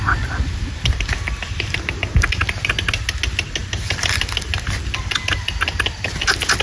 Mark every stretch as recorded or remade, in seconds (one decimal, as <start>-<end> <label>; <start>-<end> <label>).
0.0-6.6 recorded